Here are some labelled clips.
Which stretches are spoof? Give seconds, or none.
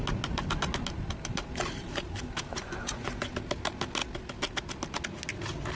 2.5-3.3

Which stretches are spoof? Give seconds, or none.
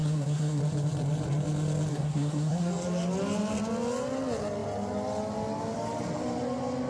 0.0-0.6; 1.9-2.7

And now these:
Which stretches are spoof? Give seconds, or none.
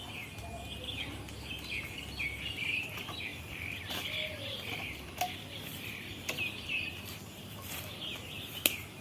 3.3-8.5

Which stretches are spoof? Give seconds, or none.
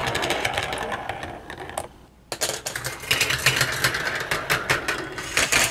none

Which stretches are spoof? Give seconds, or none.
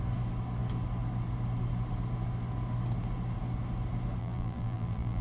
4.2-5.2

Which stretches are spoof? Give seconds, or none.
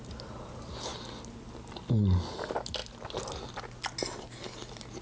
none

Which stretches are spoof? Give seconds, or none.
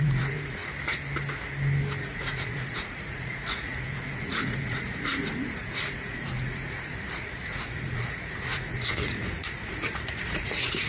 0.0-0.6; 2.0-10.9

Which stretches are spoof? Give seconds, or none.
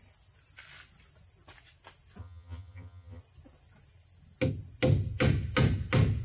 2.2-3.2